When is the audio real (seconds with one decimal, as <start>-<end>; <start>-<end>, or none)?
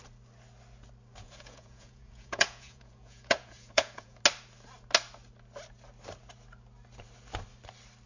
0.0-1.2; 4.2-8.1